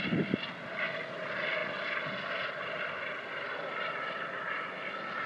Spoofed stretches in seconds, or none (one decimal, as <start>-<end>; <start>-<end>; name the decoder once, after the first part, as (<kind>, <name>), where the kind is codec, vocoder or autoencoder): none